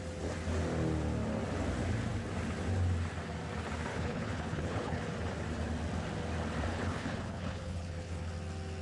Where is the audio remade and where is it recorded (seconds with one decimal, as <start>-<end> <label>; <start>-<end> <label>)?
0.0-3.9 recorded; 3.9-5.0 remade; 5.0-6.7 recorded; 6.7-8.3 remade; 8.3-8.8 recorded